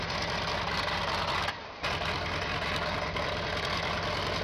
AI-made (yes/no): no